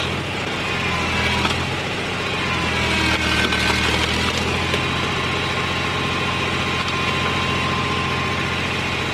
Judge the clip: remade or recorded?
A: recorded